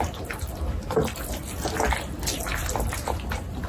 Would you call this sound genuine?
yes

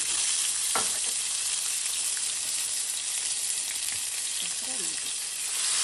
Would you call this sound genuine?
yes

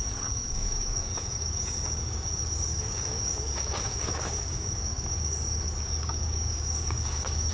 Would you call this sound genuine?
no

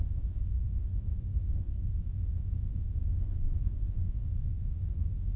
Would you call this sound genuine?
no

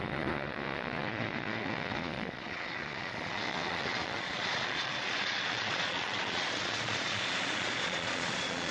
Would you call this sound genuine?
no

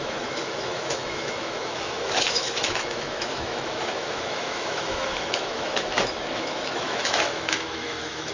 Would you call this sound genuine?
no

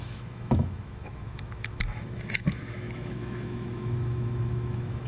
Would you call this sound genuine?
no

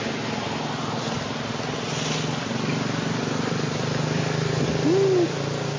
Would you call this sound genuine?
yes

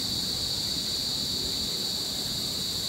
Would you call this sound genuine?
no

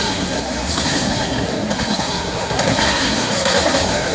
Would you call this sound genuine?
no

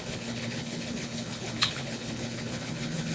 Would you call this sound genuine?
no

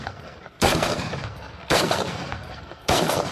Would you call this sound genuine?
no